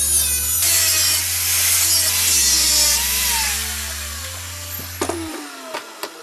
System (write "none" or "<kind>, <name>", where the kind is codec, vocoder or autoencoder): none